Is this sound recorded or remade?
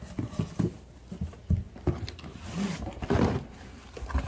recorded